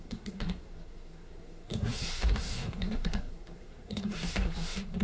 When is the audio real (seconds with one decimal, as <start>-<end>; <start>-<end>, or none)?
none